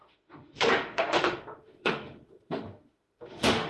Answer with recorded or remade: remade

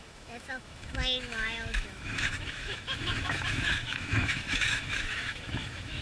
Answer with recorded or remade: remade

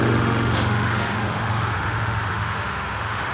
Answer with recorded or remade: remade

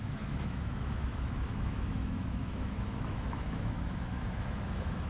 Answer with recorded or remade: remade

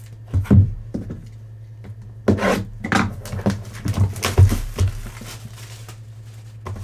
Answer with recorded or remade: recorded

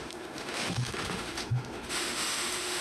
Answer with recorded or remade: remade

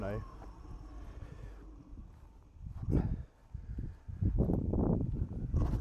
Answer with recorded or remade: recorded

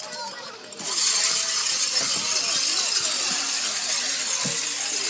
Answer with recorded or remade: recorded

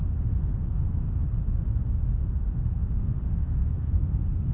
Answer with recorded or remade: remade